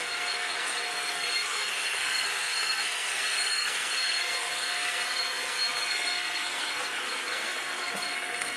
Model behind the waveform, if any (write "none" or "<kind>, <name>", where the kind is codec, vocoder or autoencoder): codec, SNAC